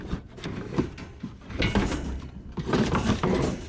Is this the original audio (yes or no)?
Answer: yes